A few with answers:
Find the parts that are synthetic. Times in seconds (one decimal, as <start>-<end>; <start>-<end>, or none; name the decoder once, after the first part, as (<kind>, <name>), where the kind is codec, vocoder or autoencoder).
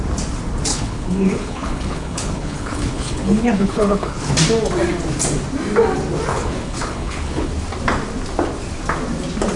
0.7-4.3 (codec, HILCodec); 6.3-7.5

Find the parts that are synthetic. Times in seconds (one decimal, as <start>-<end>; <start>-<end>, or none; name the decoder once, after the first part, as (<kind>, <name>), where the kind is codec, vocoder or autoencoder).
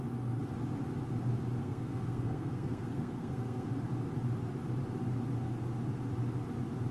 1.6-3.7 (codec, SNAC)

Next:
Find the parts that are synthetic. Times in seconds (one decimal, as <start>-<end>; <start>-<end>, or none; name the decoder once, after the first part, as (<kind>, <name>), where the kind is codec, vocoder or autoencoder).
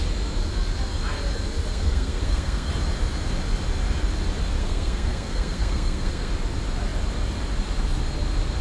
1.7-2.7 (codec, SNAC); 4.6-6.3